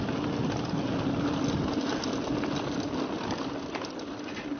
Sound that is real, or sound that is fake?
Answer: real